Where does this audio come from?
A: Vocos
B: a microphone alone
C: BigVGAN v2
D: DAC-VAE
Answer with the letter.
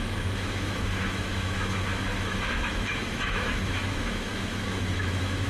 D